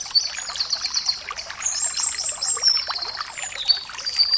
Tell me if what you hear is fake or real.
real